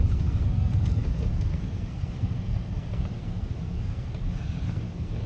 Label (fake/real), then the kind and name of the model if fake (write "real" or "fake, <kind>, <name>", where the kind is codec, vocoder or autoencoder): fake, codec, SNAC